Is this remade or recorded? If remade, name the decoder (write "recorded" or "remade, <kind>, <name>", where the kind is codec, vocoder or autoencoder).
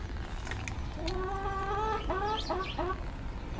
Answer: recorded